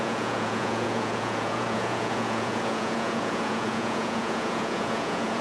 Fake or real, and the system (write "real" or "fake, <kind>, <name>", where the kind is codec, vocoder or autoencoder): fake, vocoder, Vocos